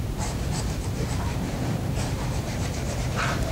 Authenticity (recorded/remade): remade